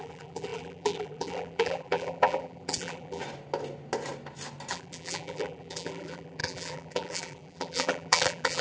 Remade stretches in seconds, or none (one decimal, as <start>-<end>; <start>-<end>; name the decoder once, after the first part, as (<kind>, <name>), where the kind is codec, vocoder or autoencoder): 0.0-3.2 (vocoder, BigVGAN v2); 4.7-8.6